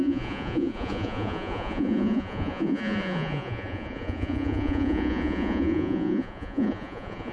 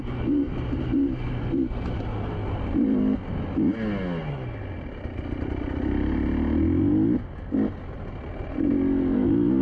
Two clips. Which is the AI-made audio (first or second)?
first